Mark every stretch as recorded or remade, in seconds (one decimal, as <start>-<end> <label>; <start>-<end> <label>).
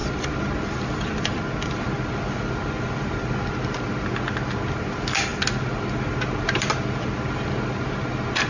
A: 0.0-8.5 recorded